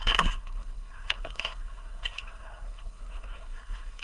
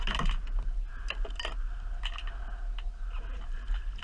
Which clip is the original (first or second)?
second